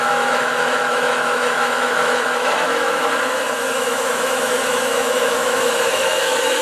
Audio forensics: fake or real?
fake